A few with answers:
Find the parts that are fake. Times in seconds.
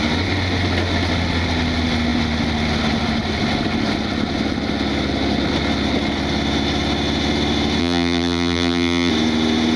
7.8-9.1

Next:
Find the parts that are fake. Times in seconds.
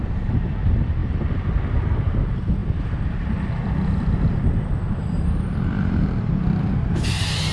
1.0-1.5; 2.6-6.6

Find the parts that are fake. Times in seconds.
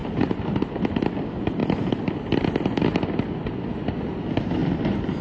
0.0-0.8; 4.6-5.2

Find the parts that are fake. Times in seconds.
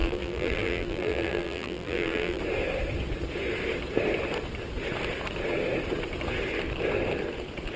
0.0-2.4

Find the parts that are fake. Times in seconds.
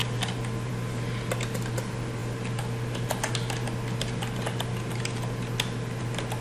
none